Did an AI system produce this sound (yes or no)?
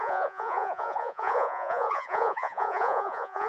yes